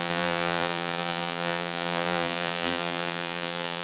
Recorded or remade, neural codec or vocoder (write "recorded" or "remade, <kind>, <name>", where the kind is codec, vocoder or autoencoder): remade, vocoder, BigVGAN v2